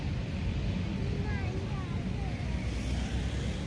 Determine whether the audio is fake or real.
real